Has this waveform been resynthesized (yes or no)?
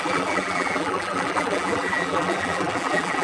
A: yes